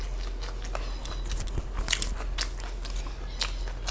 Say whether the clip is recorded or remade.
recorded